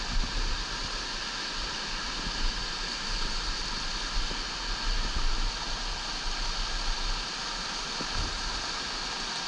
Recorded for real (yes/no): yes